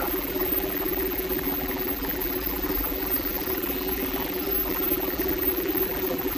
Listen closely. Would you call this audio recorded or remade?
remade